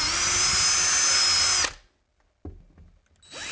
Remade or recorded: recorded